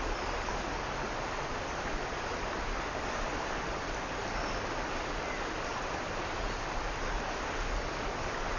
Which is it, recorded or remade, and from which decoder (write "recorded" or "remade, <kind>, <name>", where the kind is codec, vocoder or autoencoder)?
recorded